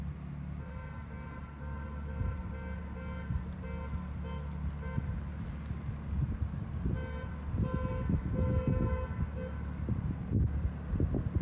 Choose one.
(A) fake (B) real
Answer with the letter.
B